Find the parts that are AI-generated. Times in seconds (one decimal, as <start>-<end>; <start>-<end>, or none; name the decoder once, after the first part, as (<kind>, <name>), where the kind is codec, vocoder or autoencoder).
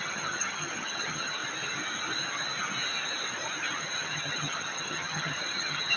0.0-1.4 (vocoder, HiFi-GAN); 3.8-6.0